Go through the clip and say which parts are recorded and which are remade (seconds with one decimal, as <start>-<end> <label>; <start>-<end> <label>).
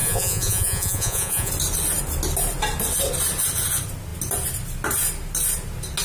0.0-1.5 remade; 1.5-6.0 recorded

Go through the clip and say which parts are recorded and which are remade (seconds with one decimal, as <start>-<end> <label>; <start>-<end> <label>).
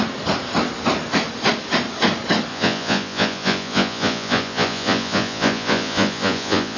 0.0-2.5 recorded; 2.5-6.8 remade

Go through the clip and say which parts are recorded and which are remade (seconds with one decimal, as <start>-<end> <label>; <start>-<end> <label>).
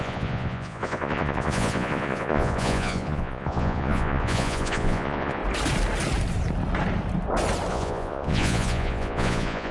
0.0-5.4 remade; 5.4-7.7 recorded; 7.7-9.7 remade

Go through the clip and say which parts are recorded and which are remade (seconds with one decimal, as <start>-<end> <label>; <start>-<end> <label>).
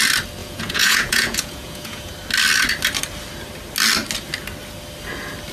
0.0-0.4 recorded; 0.4-2.1 remade; 2.1-5.5 recorded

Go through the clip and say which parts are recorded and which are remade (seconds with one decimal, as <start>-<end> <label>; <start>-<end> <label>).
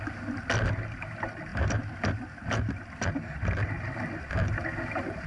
0.0-5.3 recorded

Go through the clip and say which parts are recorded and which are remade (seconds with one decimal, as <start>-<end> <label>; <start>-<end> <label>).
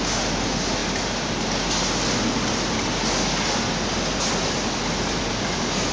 0.0-5.9 recorded